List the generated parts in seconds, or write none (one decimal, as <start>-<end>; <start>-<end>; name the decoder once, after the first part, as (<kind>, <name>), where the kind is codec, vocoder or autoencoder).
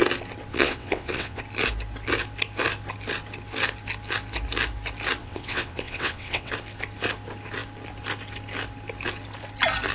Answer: 0.5-1.4 (vocoder, WaveNeXt); 5.2-6.5